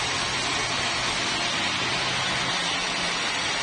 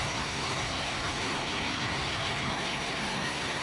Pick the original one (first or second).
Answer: first